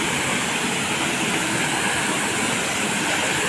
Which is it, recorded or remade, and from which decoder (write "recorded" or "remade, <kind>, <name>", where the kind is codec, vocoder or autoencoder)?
recorded